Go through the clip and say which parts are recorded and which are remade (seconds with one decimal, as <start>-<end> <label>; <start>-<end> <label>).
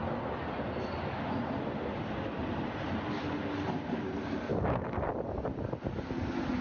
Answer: 0.0-4.5 recorded; 4.5-5.0 remade; 5.0-6.6 recorded